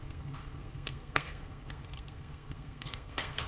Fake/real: fake